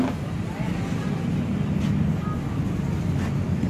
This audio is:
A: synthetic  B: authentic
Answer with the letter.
B